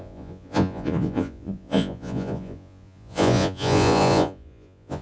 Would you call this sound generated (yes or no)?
yes